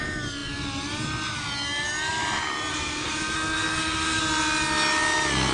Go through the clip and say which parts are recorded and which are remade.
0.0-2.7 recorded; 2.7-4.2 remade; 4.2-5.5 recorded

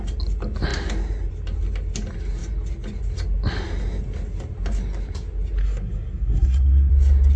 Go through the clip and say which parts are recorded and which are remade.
0.0-5.6 recorded; 5.6-6.9 remade; 6.9-7.4 recorded